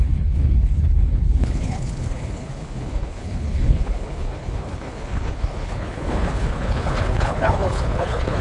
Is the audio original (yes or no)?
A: no